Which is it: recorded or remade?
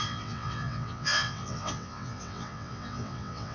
remade